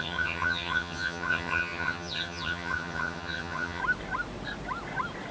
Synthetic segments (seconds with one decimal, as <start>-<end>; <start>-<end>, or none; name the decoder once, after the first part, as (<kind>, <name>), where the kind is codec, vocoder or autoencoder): 0.0-3.8 (vocoder, HiFi-GAN)